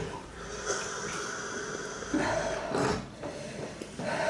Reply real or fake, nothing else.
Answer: fake